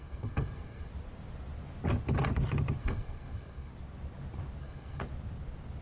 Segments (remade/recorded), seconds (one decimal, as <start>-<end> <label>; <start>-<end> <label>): 0.0-0.9 remade; 0.9-2.8 recorded; 2.8-3.7 remade; 3.7-4.6 recorded; 4.6-5.0 remade; 5.0-5.8 recorded